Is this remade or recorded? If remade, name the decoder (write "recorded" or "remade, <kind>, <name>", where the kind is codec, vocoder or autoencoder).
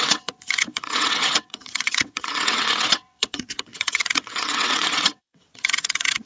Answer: remade, vocoder, WaveNeXt